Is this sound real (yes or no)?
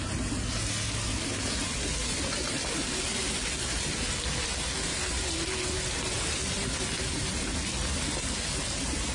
yes